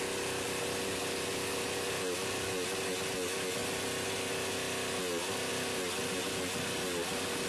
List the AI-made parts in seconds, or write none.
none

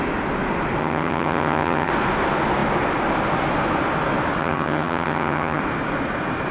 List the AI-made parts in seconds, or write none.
0.8-1.9 (vocoder, HiFi-GAN); 4.4-5.6

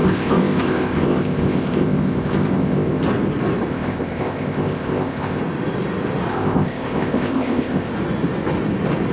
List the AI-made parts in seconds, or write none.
0.0-3.0 (codec, ZipCodec); 3.7-5.4; 6.3-7.9

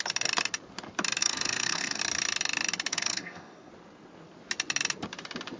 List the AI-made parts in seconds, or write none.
1.2-2.0 (codec, SNAC); 2.9-3.7

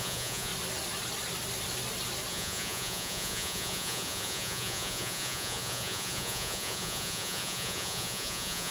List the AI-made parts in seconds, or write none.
0.0-0.5 (vocoder, Vocos); 2.3-8.7

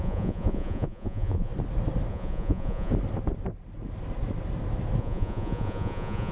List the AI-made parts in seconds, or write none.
0.0-1.5 (vocoder, Vocos); 2.1-2.9; 5.0-6.3

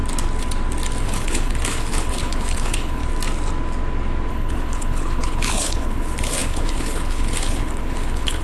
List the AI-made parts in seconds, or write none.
1.0-3.0 (codec, HILCodec); 4.3-8.4